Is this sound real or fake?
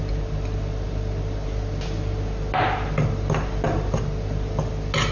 real